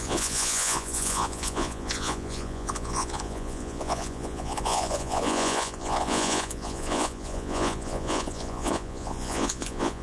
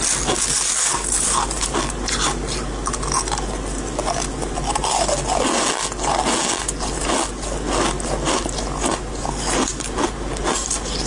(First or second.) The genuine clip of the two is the second